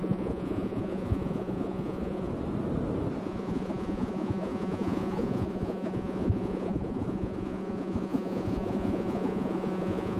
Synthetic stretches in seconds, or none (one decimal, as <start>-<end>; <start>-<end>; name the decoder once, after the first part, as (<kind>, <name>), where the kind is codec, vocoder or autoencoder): 0.0-2.3 (vocoder, Vocos); 3.2-10.2